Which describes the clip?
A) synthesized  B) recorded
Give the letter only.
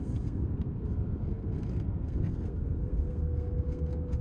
A